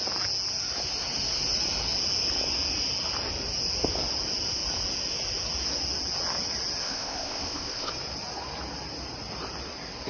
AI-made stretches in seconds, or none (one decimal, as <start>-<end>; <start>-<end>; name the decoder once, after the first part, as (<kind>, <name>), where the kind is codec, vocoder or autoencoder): 6.8-7.9 (codec, ZipCodec)

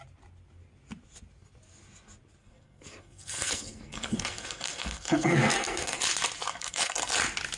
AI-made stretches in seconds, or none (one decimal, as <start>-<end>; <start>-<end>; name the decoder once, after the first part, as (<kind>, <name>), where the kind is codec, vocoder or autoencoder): 2.4-6.0 (codec, SNAC); 6.5-7.1

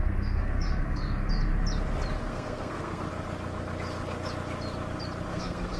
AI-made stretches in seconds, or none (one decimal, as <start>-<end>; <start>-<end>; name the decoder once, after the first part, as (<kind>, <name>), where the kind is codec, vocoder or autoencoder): 0.0-1.3 (codec, SNAC); 2.2-3.1; 5.3-5.8

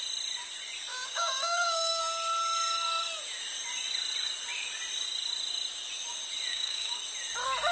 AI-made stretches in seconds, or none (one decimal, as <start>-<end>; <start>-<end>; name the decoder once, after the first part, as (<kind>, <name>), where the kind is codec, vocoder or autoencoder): 0.9-2.0 (codec, DAC); 6.5-7.0

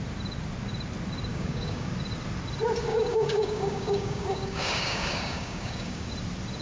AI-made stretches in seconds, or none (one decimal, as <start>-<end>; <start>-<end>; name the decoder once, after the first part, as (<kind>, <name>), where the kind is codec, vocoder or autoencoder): 1.3-1.9 (codec, DAC); 2.9-6.1

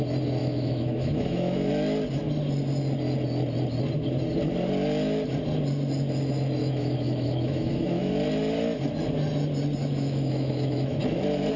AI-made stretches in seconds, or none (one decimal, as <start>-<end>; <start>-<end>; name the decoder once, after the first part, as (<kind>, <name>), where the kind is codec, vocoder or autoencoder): 0.4-1.7 (autoencoder, DAC-VAE); 6.6-8.1; 9.8-11.0